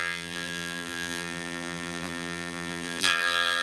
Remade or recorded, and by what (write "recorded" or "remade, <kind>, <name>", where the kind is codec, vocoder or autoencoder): remade, vocoder, BigVGAN v2